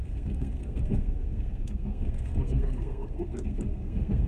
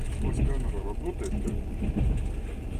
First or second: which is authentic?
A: second